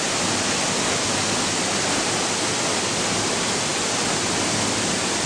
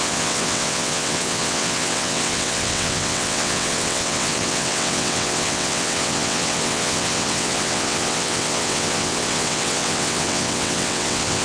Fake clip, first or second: second